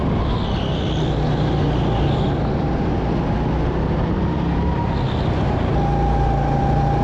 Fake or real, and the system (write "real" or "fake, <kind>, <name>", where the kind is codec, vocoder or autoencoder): real